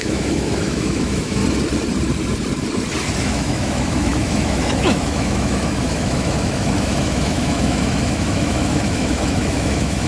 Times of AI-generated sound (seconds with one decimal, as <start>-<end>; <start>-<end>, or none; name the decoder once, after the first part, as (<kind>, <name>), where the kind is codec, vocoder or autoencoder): 0.0-1.4 (autoencoder, DAC-VAE); 3.2-10.1